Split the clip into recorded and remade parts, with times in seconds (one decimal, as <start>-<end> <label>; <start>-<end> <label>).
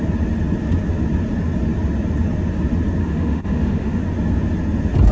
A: 0.0-3.0 recorded; 3.0-4.0 remade; 4.0-5.1 recorded